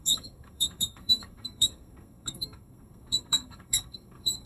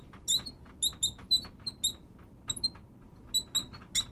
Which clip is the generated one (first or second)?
first